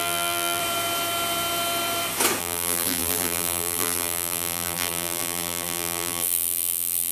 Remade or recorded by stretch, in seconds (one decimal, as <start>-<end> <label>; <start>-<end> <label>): 0.0-0.6 remade; 0.6-2.4 recorded; 2.4-7.1 remade